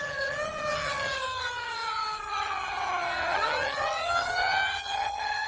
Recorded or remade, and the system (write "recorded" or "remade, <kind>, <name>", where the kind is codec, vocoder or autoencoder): remade, vocoder, HiFi-GAN